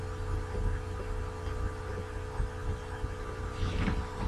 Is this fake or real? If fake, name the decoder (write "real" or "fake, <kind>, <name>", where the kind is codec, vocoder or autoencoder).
real